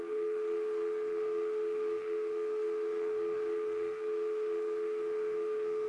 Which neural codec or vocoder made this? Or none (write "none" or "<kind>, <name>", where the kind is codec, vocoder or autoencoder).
codec, SNAC